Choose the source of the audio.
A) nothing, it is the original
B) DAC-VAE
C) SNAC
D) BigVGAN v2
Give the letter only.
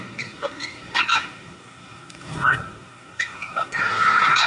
C